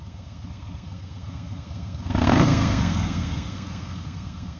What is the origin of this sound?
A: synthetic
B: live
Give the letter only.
A